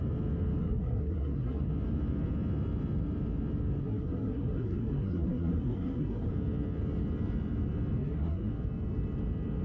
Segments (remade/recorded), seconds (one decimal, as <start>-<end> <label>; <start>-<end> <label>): 0.0-0.6 recorded; 0.6-1.7 remade; 1.7-3.8 recorded; 3.8-6.3 remade; 6.3-8.0 recorded; 8.0-8.5 remade; 8.5-9.6 recorded